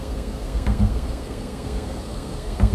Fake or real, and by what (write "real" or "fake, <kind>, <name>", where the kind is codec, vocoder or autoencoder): fake, codec, SNAC